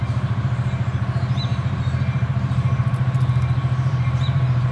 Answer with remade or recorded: remade